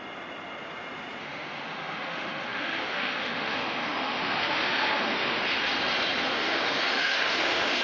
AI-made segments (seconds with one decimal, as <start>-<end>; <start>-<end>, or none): 1.2-5.4; 6.3-7.8